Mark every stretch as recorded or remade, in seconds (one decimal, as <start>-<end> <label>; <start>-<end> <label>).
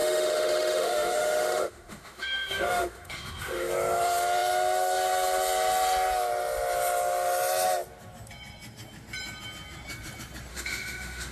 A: 0.0-3.7 remade; 3.7-10.5 recorded; 10.5-11.3 remade